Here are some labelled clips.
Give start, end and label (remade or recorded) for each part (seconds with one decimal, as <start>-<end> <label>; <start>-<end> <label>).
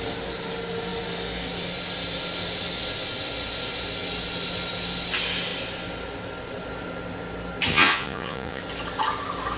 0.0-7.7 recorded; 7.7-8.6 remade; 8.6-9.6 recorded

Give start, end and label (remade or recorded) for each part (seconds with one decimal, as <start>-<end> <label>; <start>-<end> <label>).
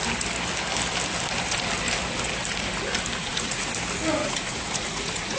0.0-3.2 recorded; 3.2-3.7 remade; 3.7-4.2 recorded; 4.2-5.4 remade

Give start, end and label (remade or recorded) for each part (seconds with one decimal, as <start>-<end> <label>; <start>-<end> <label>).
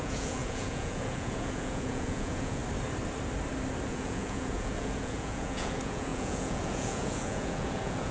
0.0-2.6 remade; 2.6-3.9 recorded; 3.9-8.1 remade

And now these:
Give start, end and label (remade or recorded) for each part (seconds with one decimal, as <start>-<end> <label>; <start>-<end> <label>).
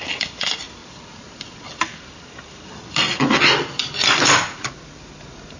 0.0-5.6 recorded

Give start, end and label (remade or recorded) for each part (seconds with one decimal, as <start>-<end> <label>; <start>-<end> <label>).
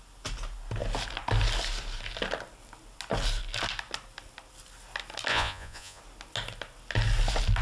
0.0-5.3 recorded; 5.3-6.0 remade; 6.0-7.6 recorded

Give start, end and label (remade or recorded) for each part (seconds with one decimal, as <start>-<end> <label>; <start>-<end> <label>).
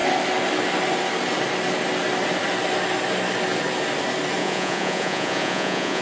0.0-4.4 recorded; 4.4-6.0 remade